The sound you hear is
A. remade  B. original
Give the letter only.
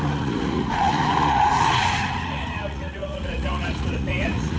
A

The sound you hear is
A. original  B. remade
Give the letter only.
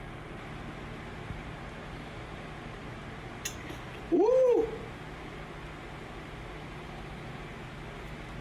A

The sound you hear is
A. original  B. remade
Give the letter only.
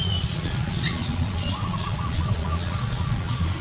B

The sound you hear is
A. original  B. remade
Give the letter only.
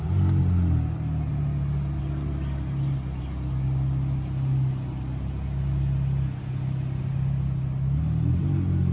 A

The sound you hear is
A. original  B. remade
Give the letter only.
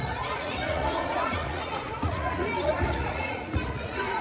B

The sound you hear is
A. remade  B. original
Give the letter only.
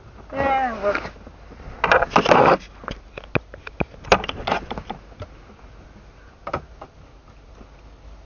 B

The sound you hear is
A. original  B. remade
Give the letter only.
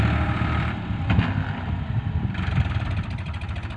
A